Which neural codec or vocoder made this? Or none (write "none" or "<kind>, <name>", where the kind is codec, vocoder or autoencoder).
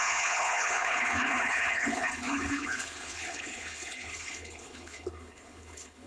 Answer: codec, HILCodec